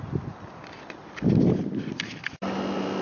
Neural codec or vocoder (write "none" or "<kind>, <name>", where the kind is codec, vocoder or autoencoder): none